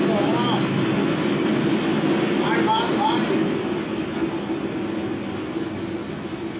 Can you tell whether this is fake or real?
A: real